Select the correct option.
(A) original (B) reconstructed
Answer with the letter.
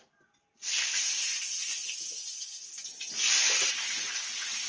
A